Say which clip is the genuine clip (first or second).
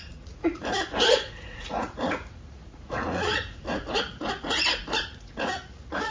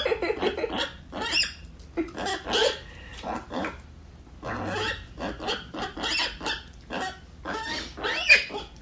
second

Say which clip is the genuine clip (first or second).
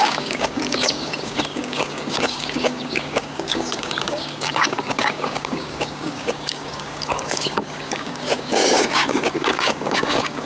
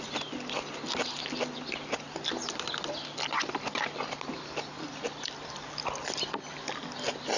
second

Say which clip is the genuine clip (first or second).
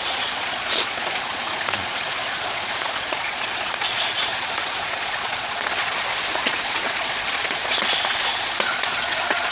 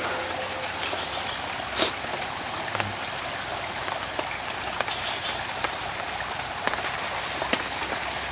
second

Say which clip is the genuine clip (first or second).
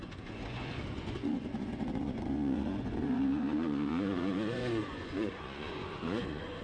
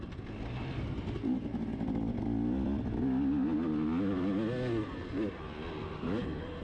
second